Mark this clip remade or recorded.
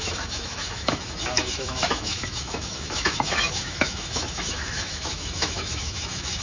remade